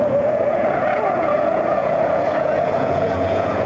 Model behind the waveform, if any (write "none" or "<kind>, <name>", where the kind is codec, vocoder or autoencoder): vocoder, Vocos